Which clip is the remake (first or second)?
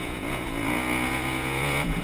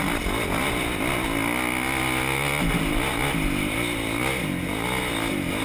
first